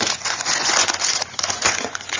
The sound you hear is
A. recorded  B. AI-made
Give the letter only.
B